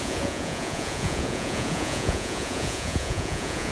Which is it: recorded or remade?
remade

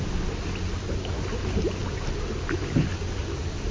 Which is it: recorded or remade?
recorded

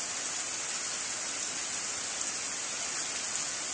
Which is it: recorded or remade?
recorded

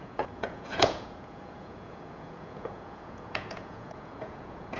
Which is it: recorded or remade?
remade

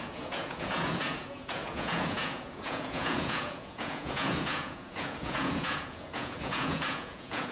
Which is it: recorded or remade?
remade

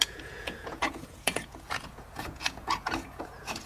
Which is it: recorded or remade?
remade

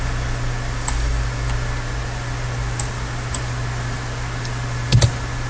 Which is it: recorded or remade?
recorded